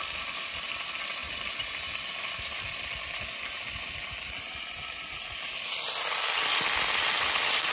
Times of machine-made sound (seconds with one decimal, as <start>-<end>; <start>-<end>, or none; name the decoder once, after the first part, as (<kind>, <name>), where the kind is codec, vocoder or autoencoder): none

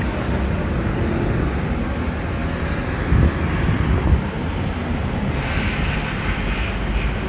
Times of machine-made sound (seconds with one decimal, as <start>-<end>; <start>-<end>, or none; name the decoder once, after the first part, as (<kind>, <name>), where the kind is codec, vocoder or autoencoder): none

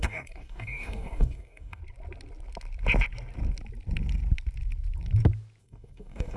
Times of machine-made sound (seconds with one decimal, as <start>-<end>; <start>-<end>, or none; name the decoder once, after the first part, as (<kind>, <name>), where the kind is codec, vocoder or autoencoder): 0.0-1.8 (codec, DAC); 5.6-6.4

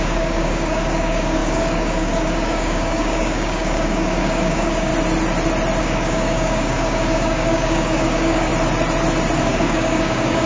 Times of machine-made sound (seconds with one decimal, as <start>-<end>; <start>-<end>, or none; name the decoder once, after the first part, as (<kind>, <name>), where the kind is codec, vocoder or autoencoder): 0.0-4.9 (codec, DAC); 5.8-8.5; 9.4-10.5